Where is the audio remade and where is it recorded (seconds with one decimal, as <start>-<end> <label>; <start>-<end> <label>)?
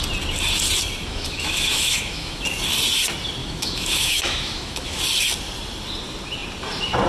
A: 0.0-1.1 recorded; 1.1-2.4 remade; 2.4-3.4 recorded; 3.4-5.0 remade; 5.0-7.1 recorded